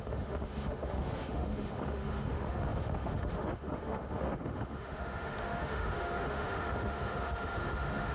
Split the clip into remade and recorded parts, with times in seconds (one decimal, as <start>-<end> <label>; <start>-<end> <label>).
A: 0.0-8.1 remade